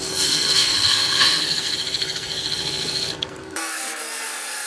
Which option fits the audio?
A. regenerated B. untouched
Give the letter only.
A